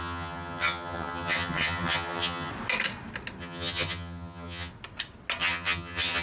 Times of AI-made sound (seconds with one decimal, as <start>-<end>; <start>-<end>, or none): 0.0-2.5; 3.4-4.7; 5.4-6.2